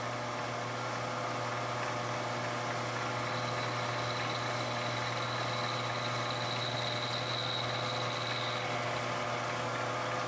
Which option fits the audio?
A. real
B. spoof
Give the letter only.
A